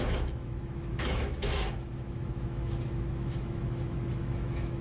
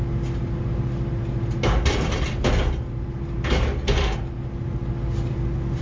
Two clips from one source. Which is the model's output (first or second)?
first